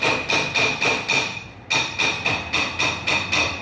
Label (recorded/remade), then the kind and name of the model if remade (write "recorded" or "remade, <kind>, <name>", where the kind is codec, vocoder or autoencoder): recorded